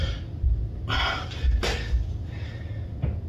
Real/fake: real